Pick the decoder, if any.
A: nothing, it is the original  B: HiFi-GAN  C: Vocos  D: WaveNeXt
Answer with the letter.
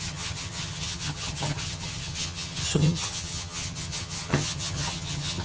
B